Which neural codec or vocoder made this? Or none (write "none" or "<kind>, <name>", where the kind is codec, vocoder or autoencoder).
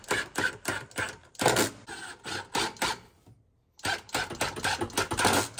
none